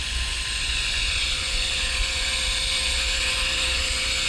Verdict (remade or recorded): remade